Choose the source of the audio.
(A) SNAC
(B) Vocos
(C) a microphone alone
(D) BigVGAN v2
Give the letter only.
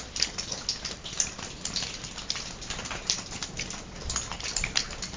C